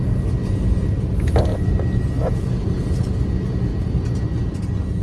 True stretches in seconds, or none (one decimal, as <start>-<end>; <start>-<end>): 0.0-3.7; 4.6-5.0